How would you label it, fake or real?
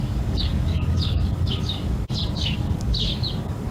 fake